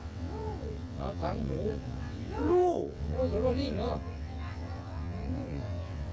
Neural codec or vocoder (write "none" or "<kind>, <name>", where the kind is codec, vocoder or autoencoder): vocoder, WaveNeXt